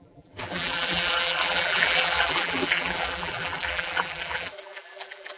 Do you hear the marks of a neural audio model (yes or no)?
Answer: yes